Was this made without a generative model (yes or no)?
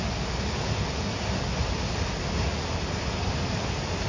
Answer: yes